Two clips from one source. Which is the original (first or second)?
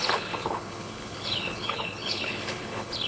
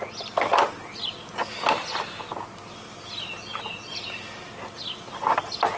second